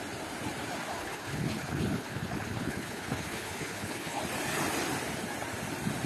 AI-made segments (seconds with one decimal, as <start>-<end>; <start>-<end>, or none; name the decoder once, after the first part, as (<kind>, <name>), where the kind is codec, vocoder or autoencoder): 1.0-4.2 (codec, HILCodec)